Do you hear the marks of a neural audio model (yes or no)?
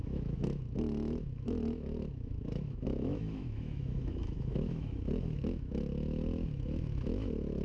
yes